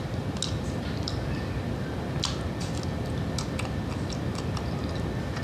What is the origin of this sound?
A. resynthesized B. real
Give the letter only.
B